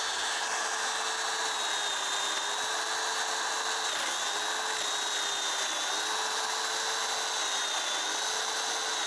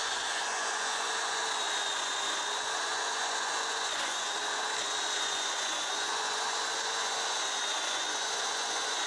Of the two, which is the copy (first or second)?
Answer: second